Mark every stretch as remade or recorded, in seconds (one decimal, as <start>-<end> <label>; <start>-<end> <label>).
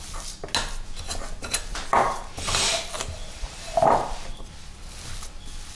0.0-1.7 recorded; 1.7-2.3 remade; 2.3-3.2 recorded; 3.2-4.4 remade; 4.4-5.7 recorded